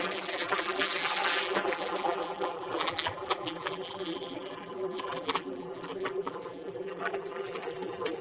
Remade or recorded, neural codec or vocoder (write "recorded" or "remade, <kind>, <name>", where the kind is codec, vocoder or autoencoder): remade, vocoder, BigVGAN v2